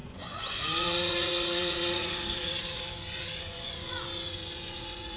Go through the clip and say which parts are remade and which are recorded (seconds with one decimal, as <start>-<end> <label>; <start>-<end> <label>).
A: 0.0-5.2 remade